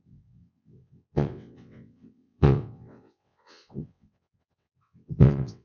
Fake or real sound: fake